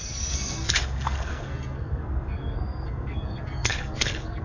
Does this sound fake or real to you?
fake